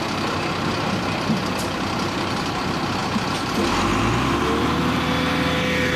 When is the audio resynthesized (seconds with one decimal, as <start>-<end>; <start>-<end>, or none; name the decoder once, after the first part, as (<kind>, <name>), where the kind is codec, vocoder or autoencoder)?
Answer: none